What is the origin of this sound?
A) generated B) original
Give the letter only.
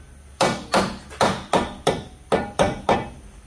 B